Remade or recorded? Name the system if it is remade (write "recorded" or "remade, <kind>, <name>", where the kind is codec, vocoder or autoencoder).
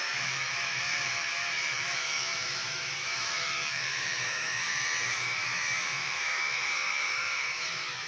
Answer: remade, autoencoder, DAC-VAE